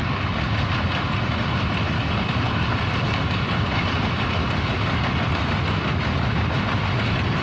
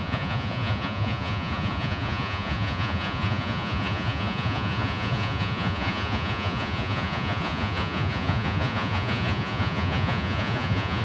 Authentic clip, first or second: first